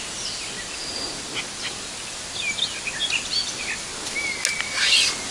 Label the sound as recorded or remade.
recorded